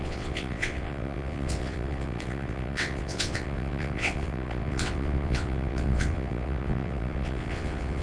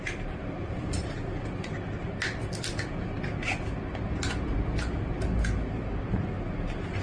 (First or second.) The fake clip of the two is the first